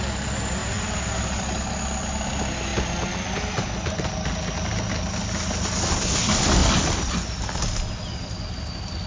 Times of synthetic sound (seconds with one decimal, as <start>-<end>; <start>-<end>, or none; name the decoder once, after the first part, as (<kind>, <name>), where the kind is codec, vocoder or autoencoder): 0.6-1.4 (vocoder, BigVGAN v2)